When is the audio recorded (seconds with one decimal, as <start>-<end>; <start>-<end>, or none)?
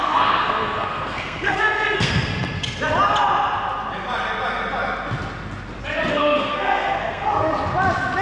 2.3-6.1; 7.5-8.2